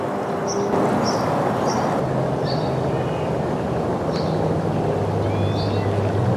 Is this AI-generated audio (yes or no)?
no